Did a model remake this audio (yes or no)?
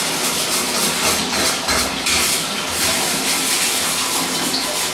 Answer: no